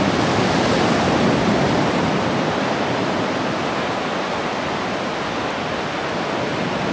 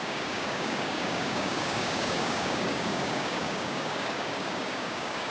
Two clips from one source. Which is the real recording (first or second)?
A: first